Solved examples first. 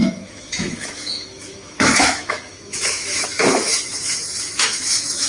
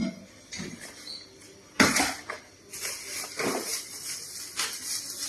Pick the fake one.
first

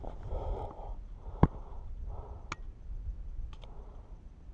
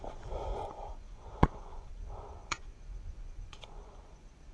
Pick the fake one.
second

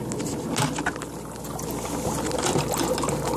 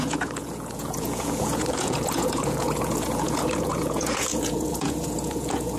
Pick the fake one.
second